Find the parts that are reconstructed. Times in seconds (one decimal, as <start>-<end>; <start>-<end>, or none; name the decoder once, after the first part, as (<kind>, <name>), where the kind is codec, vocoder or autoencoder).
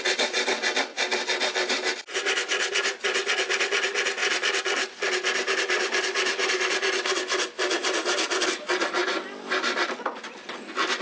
none